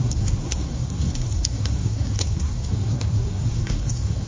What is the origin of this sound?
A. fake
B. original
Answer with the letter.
A